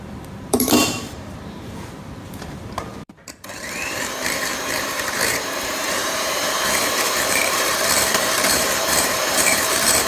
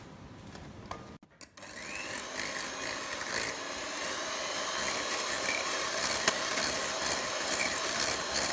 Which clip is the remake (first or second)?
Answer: first